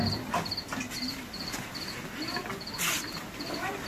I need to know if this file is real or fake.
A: real